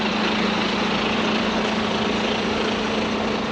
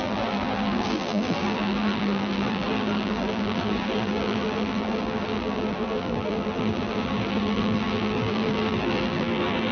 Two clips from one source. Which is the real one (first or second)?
first